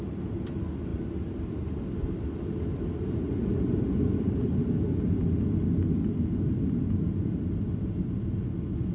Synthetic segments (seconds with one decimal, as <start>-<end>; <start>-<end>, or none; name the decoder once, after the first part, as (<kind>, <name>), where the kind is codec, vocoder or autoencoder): 0.9-1.6 (vocoder, BigVGAN v2)